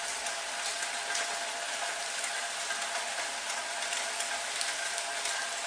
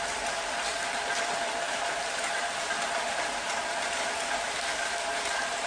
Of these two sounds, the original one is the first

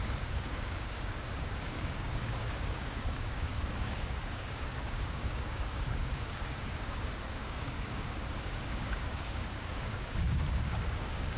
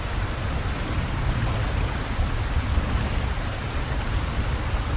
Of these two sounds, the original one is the second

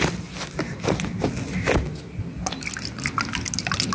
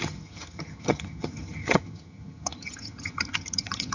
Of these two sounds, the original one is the first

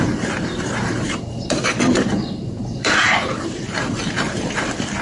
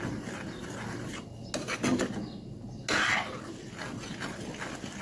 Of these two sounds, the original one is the second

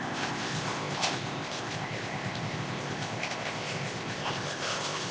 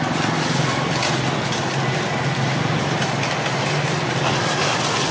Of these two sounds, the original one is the second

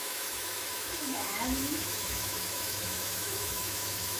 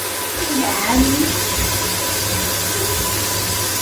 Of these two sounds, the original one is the second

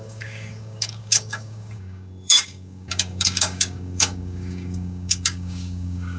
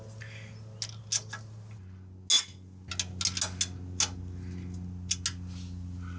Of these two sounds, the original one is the second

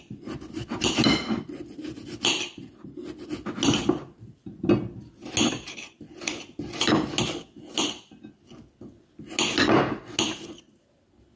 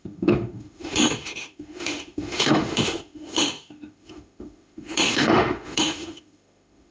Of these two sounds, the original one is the first